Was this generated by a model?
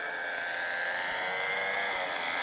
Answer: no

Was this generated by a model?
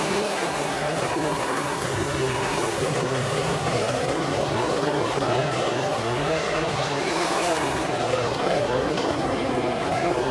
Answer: yes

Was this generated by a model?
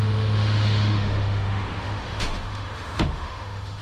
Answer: yes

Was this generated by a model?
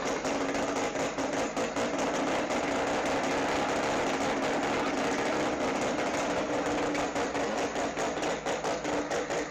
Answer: no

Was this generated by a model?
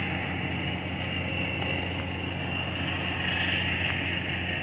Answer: no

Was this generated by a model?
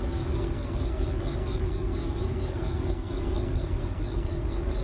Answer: yes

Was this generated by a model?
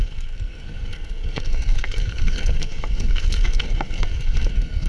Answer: yes